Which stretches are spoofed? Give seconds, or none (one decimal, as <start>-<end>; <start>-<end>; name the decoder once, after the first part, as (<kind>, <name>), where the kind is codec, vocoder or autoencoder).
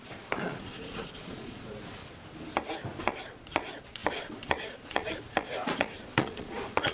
0.0-2.0 (vocoder, Vocos); 3.0-6.9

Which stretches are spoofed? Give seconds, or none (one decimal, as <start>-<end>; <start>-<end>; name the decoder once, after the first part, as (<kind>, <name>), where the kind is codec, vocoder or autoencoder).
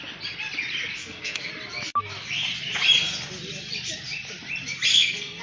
1.0-1.5 (codec, SNAC); 4.9-5.4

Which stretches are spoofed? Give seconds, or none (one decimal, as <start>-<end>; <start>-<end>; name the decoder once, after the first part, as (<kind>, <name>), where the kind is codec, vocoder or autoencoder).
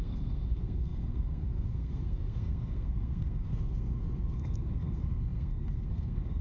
0.0-6.4 (codec, SNAC)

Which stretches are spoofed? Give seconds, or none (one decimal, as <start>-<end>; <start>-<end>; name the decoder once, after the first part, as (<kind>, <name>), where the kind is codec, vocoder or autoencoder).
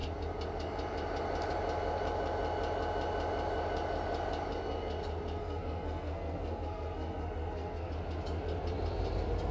5.4-7.9 (codec, SNAC)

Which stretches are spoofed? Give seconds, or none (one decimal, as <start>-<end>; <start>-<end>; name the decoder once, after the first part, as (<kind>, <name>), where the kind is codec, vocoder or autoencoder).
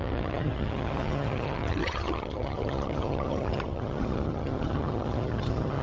0.0-5.8 (vocoder, HiFi-GAN)